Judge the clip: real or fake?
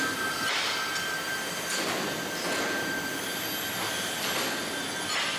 real